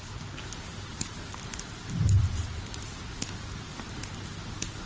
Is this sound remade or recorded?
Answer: recorded